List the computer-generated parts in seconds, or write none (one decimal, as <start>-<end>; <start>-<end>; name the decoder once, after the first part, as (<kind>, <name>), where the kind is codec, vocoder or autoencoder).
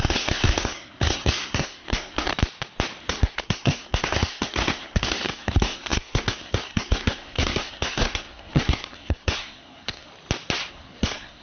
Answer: 0.0-2.3 (codec, SNAC); 3.0-10.1; 10.7-11.4